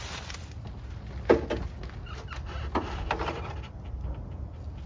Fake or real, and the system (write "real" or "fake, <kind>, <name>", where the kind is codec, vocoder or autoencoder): real